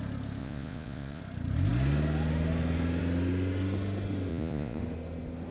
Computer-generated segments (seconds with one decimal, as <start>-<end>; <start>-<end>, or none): 0.4-1.2; 4.3-4.8